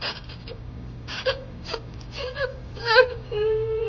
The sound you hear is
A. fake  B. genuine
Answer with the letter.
A